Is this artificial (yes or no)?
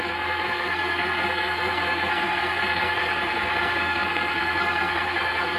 yes